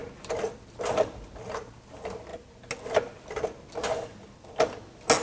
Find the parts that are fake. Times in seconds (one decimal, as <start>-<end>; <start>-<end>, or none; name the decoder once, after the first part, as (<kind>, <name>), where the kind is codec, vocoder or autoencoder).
none